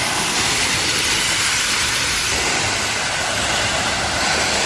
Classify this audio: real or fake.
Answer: real